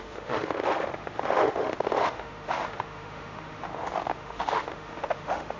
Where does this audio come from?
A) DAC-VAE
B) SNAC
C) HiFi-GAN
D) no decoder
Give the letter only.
A